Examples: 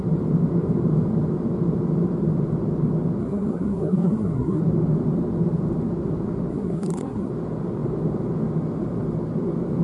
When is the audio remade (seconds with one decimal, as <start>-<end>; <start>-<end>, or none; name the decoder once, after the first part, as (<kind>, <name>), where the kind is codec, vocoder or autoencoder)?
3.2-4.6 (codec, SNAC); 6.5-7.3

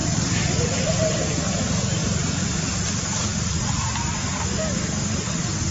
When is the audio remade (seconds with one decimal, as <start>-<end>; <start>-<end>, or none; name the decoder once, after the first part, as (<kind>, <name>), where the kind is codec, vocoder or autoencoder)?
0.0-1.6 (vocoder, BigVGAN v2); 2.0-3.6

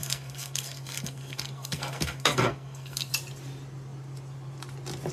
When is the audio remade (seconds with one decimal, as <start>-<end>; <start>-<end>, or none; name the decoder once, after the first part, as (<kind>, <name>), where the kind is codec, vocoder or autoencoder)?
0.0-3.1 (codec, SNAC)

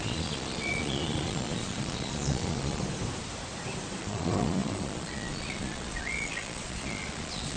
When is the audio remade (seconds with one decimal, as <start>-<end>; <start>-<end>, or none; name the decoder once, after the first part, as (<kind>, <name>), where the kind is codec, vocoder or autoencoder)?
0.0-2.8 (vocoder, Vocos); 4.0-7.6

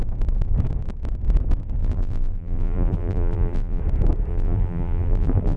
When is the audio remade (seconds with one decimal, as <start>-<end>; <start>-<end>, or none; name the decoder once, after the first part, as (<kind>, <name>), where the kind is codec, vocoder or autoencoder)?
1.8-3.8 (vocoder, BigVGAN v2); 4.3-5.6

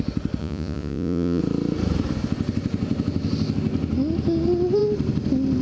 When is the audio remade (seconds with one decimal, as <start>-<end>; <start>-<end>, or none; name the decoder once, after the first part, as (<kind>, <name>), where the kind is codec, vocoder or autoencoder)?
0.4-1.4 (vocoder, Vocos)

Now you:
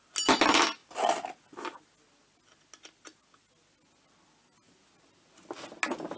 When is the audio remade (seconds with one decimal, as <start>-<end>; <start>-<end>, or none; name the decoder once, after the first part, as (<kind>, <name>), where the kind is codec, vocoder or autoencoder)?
none

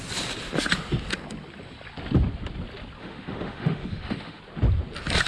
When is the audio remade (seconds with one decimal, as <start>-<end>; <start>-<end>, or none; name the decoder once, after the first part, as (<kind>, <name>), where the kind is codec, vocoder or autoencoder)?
3.0-4.4 (autoencoder, DAC-VAE)